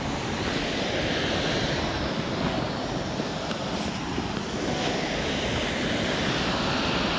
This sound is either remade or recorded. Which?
recorded